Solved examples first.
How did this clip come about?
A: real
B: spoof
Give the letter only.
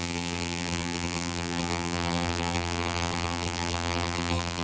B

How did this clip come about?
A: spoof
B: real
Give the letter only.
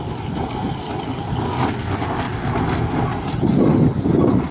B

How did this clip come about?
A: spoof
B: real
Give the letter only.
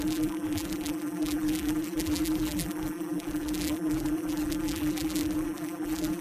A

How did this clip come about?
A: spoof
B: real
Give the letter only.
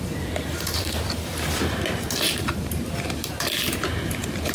A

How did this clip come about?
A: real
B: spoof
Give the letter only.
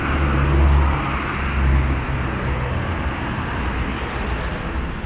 A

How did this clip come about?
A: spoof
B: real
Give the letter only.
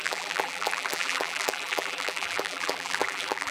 A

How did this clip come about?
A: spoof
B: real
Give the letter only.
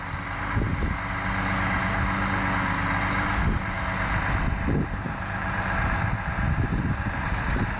B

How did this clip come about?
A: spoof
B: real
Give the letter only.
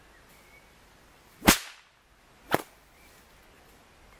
B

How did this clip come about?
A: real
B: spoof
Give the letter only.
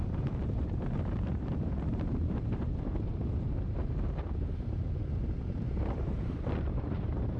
B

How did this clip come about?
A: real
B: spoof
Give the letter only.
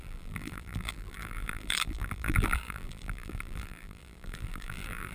B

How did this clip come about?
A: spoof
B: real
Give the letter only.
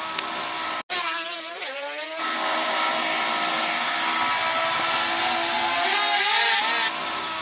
B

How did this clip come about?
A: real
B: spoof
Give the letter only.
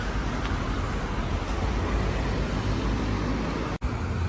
A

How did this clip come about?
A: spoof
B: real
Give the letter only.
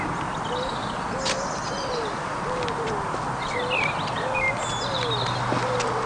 B